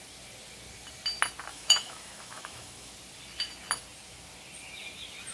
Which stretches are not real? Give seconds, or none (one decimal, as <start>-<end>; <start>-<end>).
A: 1.5-2.9